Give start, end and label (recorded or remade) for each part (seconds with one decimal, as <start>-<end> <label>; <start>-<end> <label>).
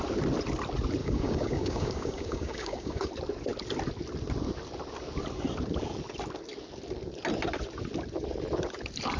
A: 0.0-1.0 recorded; 1.0-3.1 remade; 3.1-9.2 recorded